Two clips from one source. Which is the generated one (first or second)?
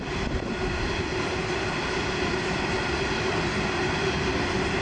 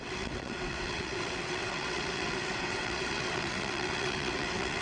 second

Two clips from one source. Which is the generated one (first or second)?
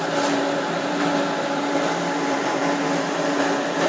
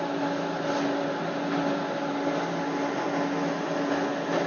first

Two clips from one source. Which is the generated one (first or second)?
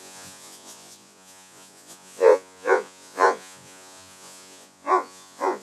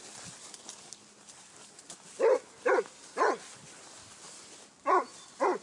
first